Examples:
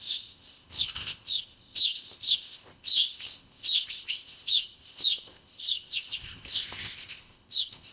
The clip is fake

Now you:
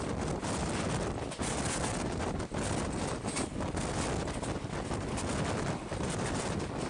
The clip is real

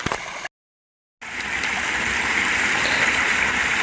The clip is real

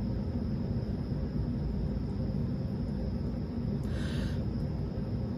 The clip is real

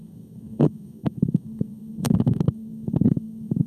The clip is fake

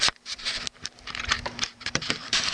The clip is fake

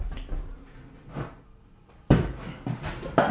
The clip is real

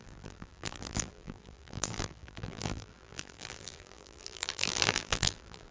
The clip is fake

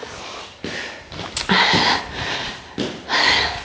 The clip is real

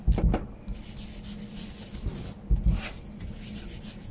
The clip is real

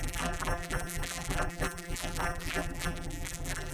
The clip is fake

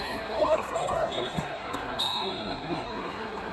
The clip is fake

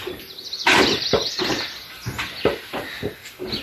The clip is real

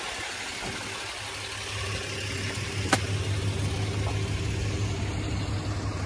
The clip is real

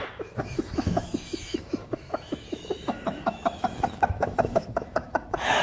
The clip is fake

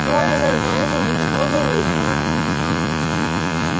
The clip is fake